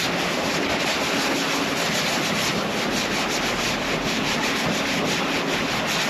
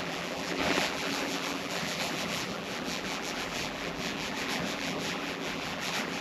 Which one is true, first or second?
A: first